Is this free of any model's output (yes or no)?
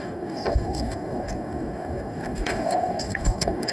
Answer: no